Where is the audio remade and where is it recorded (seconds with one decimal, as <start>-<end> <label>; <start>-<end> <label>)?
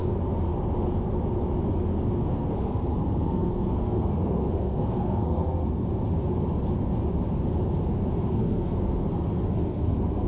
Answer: 0.0-2.3 recorded; 2.3-5.8 remade; 5.8-8.2 recorded; 8.2-10.3 remade